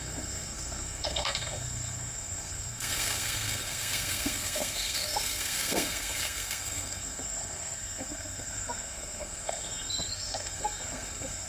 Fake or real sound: fake